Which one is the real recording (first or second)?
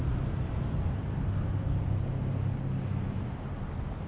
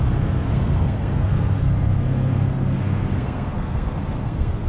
first